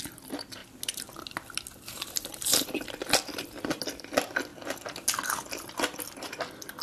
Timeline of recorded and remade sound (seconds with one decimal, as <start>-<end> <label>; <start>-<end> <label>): 0.0-6.8 recorded